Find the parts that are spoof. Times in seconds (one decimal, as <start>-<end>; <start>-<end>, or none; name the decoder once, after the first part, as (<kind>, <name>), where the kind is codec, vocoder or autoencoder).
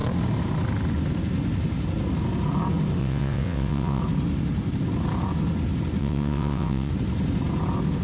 3.0-4.0 (vocoder, WaveNeXt); 6.0-6.9